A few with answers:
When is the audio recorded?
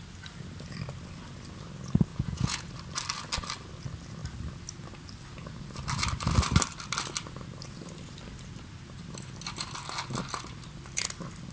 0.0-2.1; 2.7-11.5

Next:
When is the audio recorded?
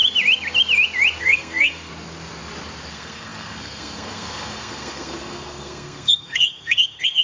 0.0-1.2; 1.9-2.9